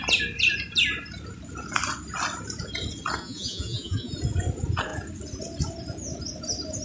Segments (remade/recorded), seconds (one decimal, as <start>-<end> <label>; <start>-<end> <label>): 0.0-3.2 recorded; 3.2-4.1 remade; 4.1-6.8 recorded